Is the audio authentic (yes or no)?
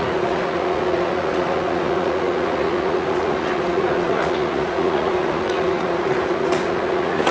no